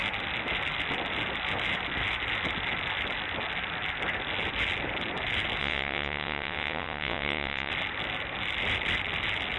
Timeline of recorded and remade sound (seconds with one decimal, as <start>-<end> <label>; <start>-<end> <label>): 0.0-5.6 recorded; 5.6-7.7 remade; 7.7-9.6 recorded